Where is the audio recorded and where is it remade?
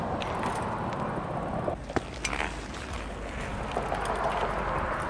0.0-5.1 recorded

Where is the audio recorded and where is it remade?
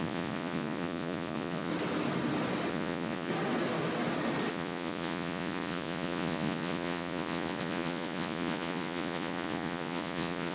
0.0-1.7 remade; 1.7-2.7 recorded; 2.7-3.3 remade; 3.3-4.5 recorded; 4.5-10.5 remade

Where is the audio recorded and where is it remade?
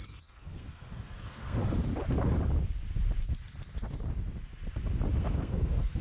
0.0-1.6 remade; 1.6-5.2 recorded; 5.2-6.0 remade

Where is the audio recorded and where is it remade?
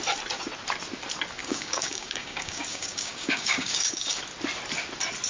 0.0-1.4 recorded; 1.4-4.2 remade; 4.2-5.3 recorded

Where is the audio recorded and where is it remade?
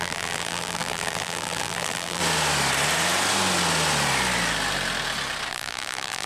0.0-2.2 remade; 2.2-5.5 recorded; 5.5-6.3 remade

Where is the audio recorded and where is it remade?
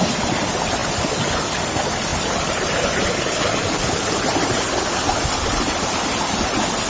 0.0-6.9 recorded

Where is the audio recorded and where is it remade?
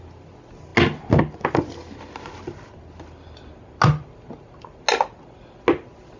0.0-6.2 recorded